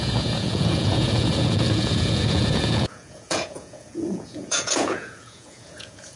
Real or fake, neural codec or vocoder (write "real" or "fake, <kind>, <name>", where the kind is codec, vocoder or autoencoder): fake, vocoder, Vocos